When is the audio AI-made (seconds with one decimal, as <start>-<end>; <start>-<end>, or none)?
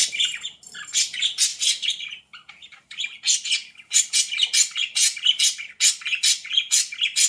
4.4-5.6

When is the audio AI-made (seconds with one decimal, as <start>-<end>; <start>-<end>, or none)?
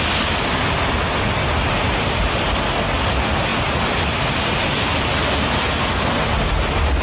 none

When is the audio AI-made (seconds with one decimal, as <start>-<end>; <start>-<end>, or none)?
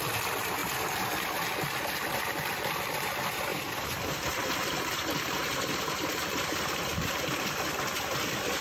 3.5-7.4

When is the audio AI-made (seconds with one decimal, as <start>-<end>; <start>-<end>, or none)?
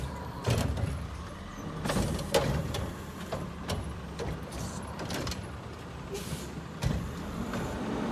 0.0-8.1